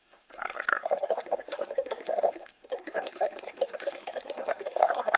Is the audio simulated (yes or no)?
yes